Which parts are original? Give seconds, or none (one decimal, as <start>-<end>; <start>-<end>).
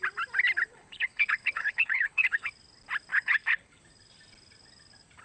0.0-0.7; 2.5-3.1; 3.8-5.2